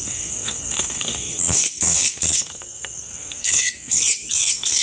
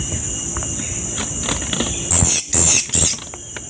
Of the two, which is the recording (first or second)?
second